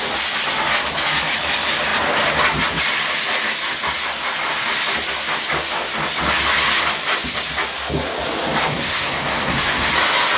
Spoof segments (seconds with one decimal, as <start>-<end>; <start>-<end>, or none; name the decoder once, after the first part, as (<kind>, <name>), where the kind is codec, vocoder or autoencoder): 8.7-9.9 (codec, SNAC)